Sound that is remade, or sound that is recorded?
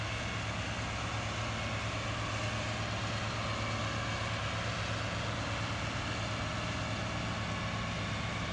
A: recorded